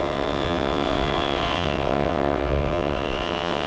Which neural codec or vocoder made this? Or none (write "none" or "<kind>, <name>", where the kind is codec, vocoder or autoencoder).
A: vocoder, WaveNeXt